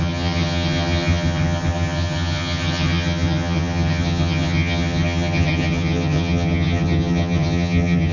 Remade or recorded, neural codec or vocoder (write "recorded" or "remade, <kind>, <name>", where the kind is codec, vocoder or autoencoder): remade, vocoder, HiFi-GAN